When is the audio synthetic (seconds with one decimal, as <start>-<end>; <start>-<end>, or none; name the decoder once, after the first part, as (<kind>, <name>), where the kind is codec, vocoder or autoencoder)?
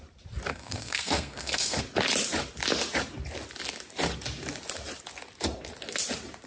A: 0.5-1.8 (codec, SNAC)